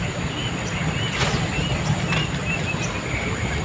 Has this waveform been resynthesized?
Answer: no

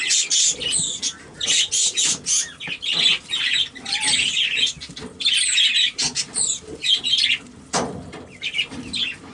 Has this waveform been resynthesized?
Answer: no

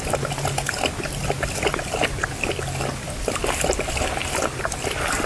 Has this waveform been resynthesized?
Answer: no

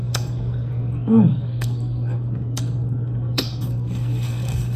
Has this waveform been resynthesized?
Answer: yes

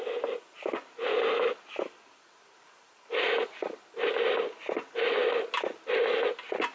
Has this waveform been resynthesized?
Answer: no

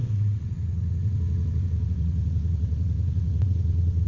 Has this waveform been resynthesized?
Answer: yes